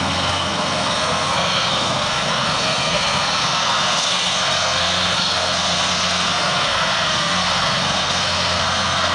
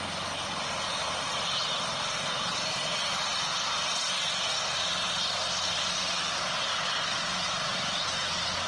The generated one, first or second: first